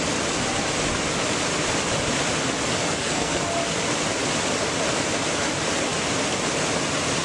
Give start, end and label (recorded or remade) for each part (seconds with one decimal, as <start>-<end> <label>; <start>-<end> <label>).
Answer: 0.0-2.8 recorded; 2.8-3.4 remade; 3.4-7.2 recorded